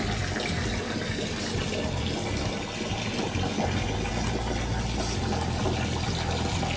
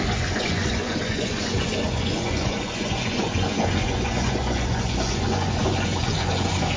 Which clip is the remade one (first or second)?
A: second